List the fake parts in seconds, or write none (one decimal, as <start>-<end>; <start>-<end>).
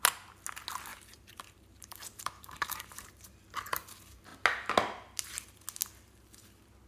0.9-3.5